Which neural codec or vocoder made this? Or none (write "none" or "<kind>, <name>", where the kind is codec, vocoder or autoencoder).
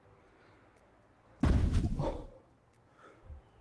none